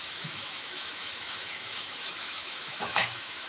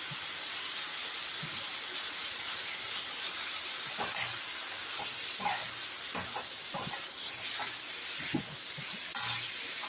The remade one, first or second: first